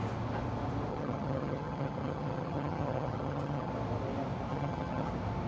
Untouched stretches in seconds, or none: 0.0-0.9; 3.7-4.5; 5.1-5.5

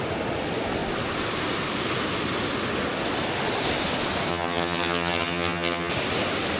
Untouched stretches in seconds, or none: 0.0-4.3; 5.9-6.6

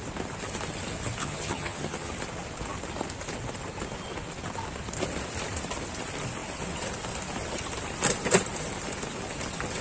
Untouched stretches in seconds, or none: 0.0-1.2; 2.1-9.8

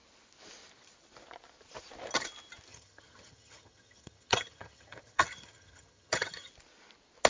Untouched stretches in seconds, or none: 0.0-2.7; 6.5-7.3

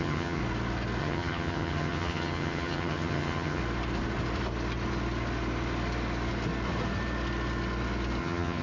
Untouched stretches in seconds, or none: 0.4-1.0; 3.6-8.2

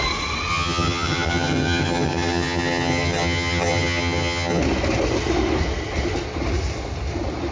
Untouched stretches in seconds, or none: 0.0-0.5; 4.6-7.5